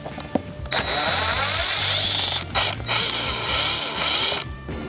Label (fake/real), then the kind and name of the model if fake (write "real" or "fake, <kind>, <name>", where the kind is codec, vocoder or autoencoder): real